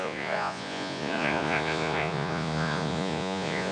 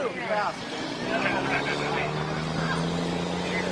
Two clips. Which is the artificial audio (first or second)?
first